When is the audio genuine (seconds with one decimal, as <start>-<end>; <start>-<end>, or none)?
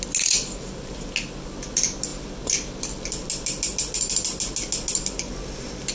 0.0-5.9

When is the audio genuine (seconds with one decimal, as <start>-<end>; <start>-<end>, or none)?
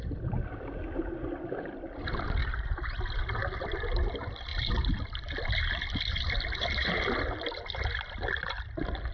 0.0-2.4; 3.0-4.5; 7.2-9.1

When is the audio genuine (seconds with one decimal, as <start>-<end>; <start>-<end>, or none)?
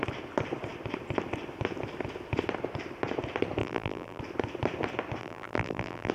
0.0-3.6; 4.2-5.2